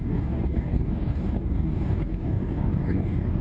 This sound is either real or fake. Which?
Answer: fake